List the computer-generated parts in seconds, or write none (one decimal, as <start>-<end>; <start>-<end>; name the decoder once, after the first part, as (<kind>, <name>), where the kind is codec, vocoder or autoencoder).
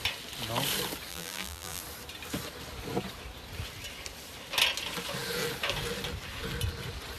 1.1-1.8 (vocoder, BigVGAN v2)